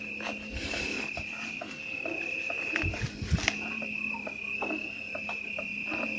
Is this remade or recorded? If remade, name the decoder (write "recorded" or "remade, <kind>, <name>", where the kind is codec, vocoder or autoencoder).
recorded